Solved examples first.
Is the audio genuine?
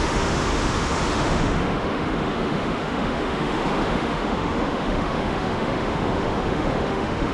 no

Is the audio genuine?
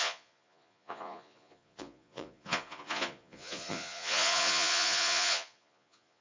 no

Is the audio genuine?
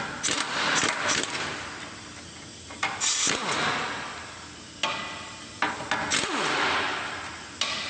yes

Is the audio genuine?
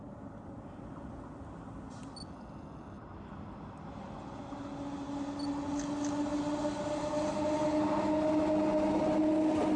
yes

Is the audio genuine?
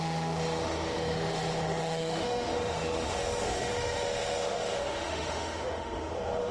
no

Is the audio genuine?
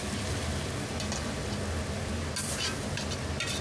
yes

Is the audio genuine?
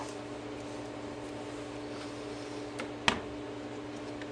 yes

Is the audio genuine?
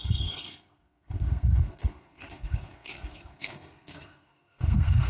no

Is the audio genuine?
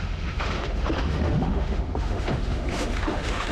no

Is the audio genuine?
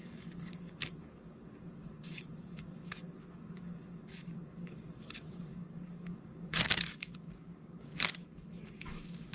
no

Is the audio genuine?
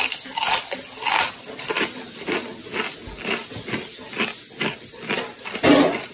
yes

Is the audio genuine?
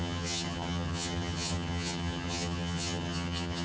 no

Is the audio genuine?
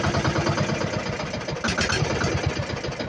yes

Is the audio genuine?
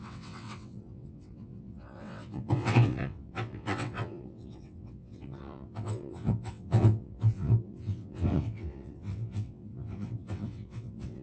no